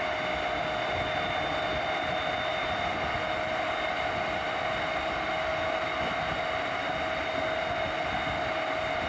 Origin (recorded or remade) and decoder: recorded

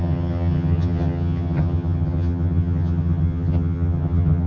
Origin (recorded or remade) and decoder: remade, vocoder, HiFi-GAN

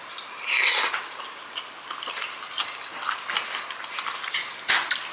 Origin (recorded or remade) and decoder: recorded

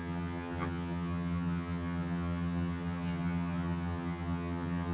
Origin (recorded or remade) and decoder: remade, vocoder, HiFi-GAN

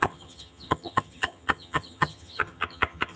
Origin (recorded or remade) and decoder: remade, vocoder, HiFi-GAN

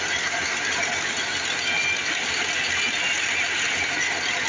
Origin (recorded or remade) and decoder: recorded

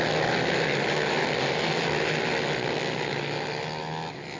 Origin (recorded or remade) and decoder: recorded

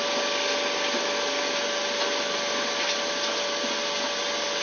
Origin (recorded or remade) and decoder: recorded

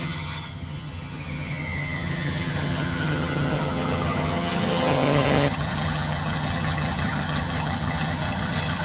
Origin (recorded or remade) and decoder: remade, vocoder, HiFi-GAN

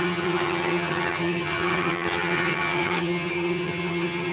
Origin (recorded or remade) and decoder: remade, vocoder, HiFi-GAN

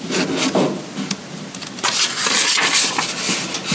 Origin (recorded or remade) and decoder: recorded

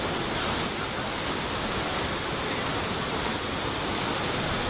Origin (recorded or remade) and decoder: recorded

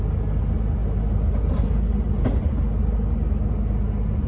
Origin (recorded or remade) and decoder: recorded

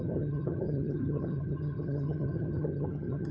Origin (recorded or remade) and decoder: remade, vocoder, HiFi-GAN